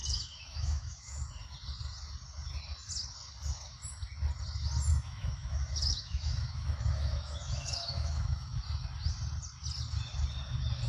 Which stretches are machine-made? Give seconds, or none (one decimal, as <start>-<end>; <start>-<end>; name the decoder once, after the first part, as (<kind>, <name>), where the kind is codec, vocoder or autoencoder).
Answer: 0.0-1.3 (autoencoder, DAC-VAE); 4.9-8.6